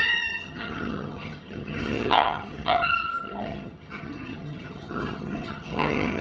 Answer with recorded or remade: remade